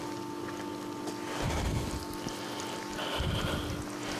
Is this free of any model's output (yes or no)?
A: yes